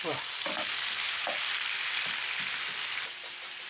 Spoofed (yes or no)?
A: yes